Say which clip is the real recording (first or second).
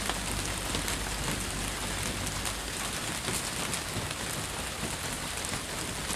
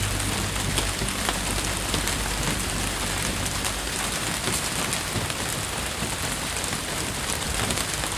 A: first